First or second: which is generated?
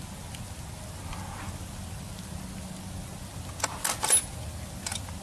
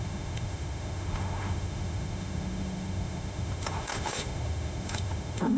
second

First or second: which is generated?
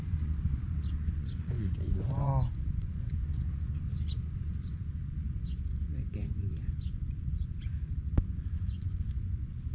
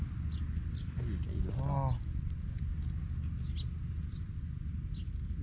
first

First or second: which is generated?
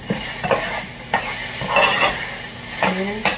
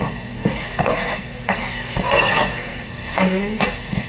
second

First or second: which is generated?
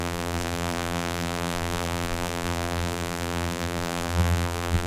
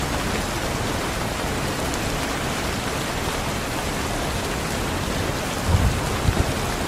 first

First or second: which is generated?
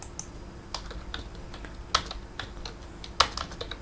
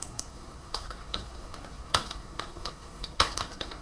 second